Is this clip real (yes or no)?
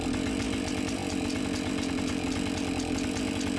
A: yes